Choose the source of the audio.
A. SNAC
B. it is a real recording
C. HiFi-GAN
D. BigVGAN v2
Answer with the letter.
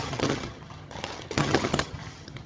C